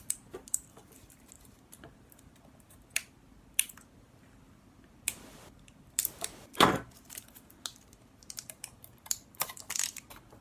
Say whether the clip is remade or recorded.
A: recorded